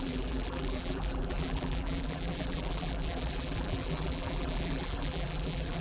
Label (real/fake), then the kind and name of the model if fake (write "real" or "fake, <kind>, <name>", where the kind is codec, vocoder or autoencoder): fake, vocoder, BigVGAN v2